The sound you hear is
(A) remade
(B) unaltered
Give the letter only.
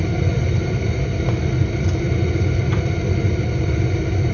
B